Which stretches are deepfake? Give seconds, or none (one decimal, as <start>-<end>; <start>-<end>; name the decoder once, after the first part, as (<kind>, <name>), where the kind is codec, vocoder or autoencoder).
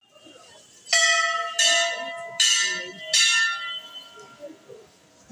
none